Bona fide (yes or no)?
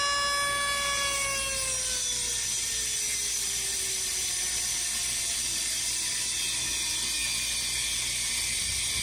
yes